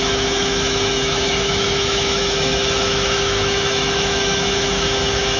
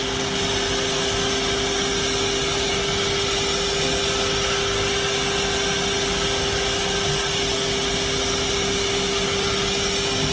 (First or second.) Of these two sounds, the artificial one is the first